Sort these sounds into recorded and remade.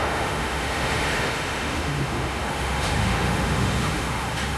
remade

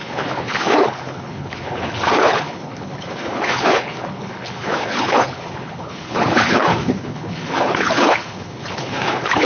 remade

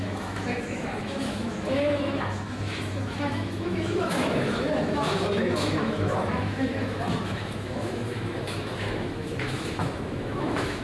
remade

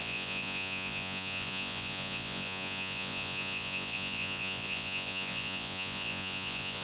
remade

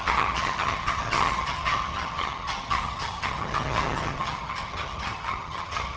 remade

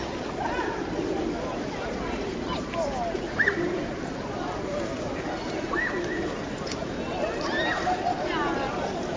recorded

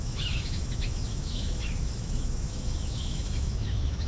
remade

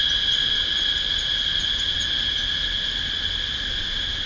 recorded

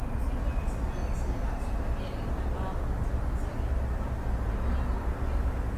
recorded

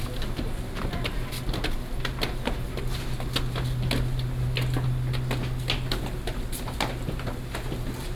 recorded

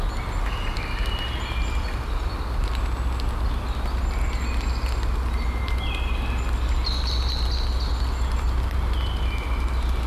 recorded